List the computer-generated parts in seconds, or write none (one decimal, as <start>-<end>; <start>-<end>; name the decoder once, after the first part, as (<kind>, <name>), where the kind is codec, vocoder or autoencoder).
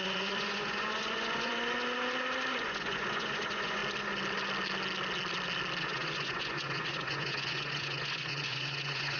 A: 0.0-1.5 (vocoder, Vocos); 2.6-3.8; 5.8-9.2